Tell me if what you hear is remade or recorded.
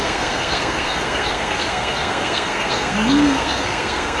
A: remade